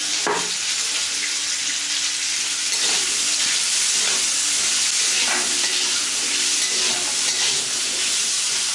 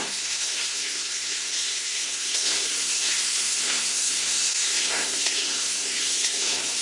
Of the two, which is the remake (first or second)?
second